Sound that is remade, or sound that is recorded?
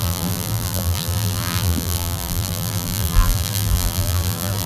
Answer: remade